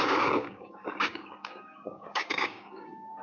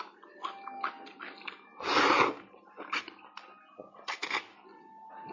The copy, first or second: first